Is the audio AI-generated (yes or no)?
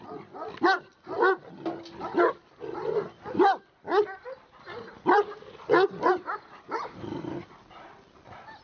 no